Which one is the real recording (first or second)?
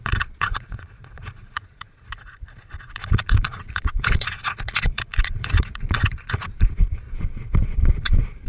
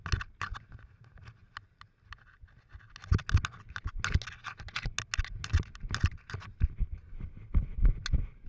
second